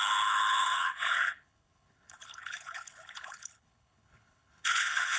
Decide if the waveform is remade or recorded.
remade